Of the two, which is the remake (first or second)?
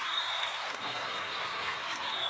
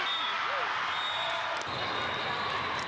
first